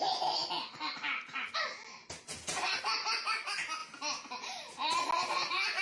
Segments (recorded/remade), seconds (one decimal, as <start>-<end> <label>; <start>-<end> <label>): 0.0-5.8 recorded